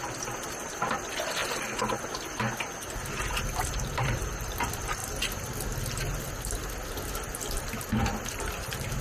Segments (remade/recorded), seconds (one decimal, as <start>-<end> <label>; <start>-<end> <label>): 0.0-1.4 remade; 1.4-3.1 recorded; 3.1-5.0 remade; 5.0-8.4 recorded; 8.4-9.0 remade